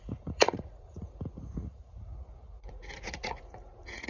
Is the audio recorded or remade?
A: remade